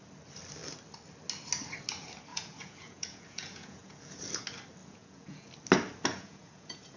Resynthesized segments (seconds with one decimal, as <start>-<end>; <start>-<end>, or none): 2.3-4.2; 4.8-5.5; 6.1-7.0